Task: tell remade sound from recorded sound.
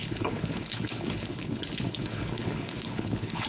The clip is remade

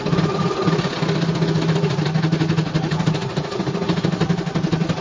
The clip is recorded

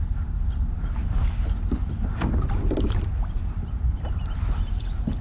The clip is recorded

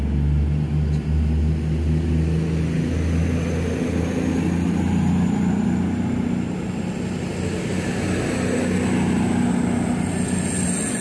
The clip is recorded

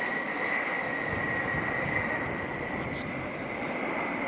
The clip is recorded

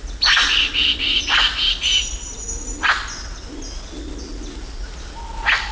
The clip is recorded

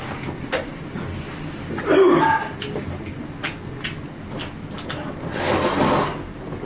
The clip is recorded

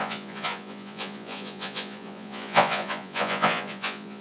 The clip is remade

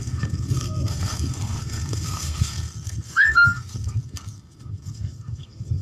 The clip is remade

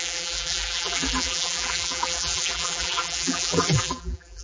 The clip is remade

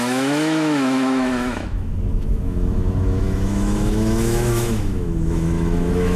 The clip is remade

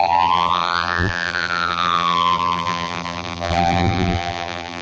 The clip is remade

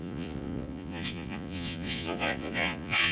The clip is remade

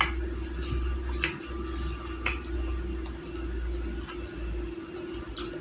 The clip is recorded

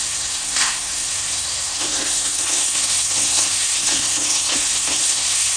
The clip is remade